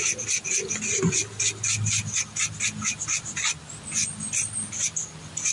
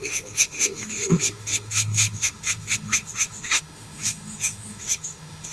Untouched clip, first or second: first